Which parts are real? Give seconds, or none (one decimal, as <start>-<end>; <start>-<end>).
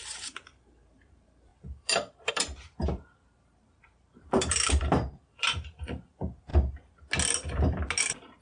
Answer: 6.5-8.0